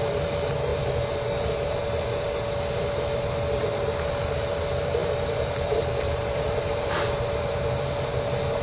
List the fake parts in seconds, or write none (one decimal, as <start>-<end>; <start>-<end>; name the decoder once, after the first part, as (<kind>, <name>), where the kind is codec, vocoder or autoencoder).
5.0-8.1 (vocoder, BigVGAN v2)